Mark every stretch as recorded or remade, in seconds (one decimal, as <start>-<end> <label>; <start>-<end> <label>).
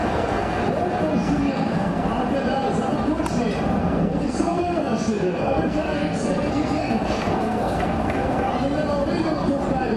0.0-0.6 remade; 0.6-1.1 recorded; 1.1-2.1 remade; 2.1-3.8 recorded; 3.8-8.5 remade; 8.5-10.0 recorded